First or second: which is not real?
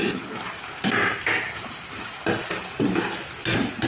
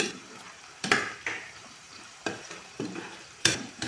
second